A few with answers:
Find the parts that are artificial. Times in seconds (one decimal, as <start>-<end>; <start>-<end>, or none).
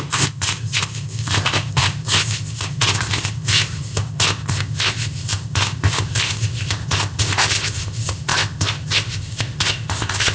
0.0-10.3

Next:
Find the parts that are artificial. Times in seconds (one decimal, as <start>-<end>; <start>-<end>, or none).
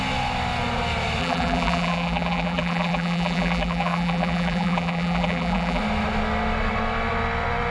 1.2-5.8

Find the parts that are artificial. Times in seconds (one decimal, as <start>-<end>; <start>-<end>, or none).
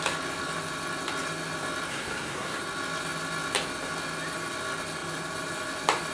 1.9-2.6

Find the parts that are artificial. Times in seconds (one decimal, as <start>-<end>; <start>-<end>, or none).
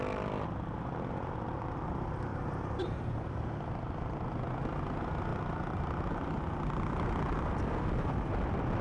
2.3-3.3; 5.3-6.1